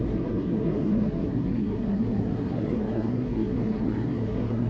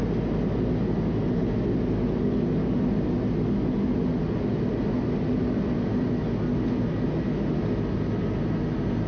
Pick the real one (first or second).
second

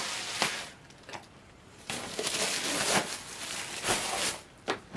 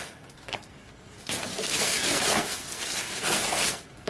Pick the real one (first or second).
first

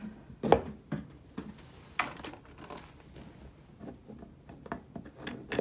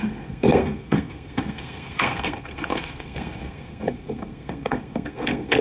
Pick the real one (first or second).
first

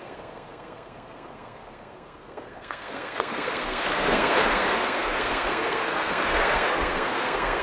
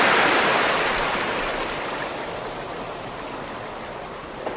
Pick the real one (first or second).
second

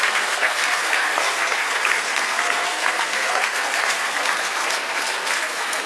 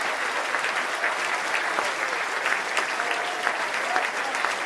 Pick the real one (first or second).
second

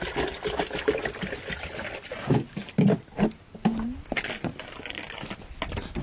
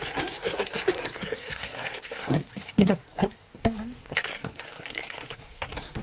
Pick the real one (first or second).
first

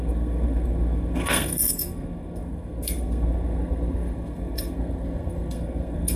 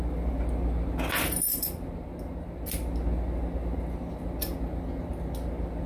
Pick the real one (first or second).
second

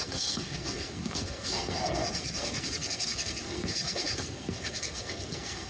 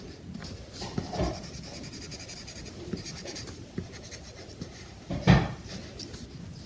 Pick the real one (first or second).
second